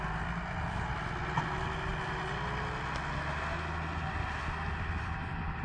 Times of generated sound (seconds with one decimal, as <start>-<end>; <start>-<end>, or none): none